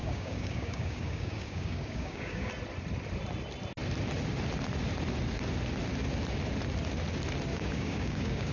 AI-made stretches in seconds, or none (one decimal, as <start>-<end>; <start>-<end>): 0.0-2.5; 7.5-8.5